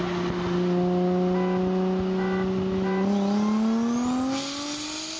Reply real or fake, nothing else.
real